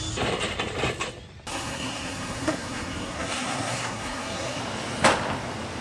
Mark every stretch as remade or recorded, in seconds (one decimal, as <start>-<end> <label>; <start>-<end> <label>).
0.0-1.5 recorded; 1.5-4.6 remade; 4.6-5.8 recorded